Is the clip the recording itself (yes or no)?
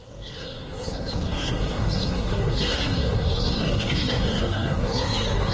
no